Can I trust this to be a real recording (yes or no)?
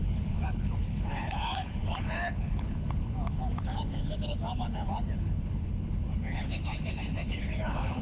no